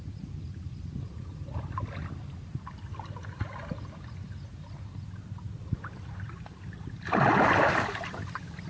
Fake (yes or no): no